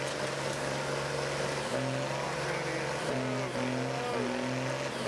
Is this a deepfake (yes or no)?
no